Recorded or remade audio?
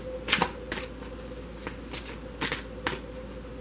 recorded